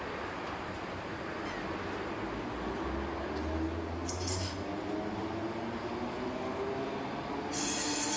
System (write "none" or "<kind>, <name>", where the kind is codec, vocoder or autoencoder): none